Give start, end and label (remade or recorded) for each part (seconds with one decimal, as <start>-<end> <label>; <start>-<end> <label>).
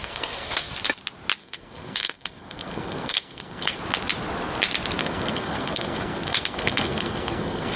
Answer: 0.0-0.7 remade; 0.7-1.4 recorded; 1.4-3.8 remade; 3.8-5.0 recorded; 5.0-7.8 remade